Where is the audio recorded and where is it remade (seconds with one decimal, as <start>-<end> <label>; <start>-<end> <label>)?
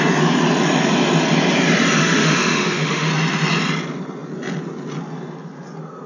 0.0-2.0 recorded; 2.0-3.1 remade; 3.1-6.1 recorded